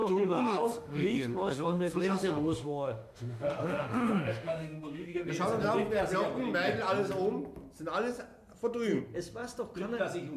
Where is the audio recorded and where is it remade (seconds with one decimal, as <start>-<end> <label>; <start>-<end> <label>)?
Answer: 0.0-5.3 remade; 5.3-10.4 recorded